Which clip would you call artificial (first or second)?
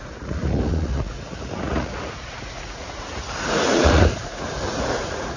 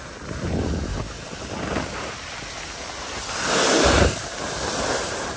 first